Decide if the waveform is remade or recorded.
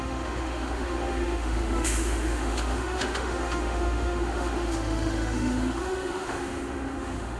remade